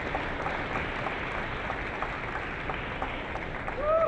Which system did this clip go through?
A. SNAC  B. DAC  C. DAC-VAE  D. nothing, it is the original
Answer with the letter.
D